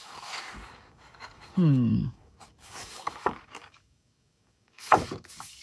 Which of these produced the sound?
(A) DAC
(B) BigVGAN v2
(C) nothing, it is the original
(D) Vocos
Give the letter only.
A